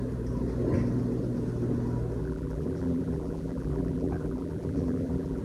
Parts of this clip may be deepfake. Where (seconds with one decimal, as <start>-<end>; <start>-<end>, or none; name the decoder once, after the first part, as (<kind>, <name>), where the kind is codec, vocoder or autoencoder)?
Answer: 2.2-5.4 (vocoder, BigVGAN v2)